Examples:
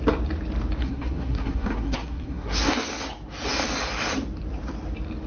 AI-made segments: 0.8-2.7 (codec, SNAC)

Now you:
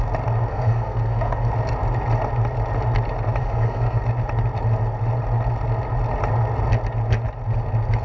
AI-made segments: 0.5-1.5 (codec, SNAC); 3.4-4.0

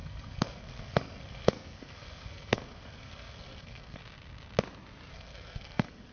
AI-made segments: 0.0-4.0 (codec, SNAC); 5.1-6.1

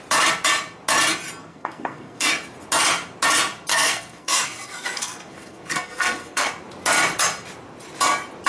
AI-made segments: 1.4-2.3 (codec, SNAC); 3.7-6.5

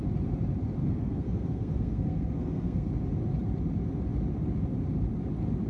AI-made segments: 0.8-2.9 (codec, SNAC)

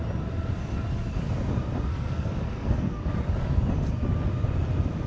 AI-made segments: 1.9-3.1 (codec, SNAC)